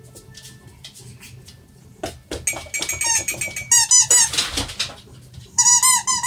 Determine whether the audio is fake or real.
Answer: real